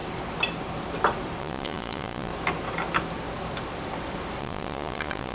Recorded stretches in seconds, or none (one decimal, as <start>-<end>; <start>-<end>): 0.0-1.4; 2.3-4.4